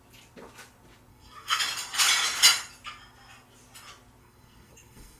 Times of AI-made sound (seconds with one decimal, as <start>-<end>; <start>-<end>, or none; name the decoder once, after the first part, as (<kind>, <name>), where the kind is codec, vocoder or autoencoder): 1.1-1.6 (codec, SNAC); 4.2-5.2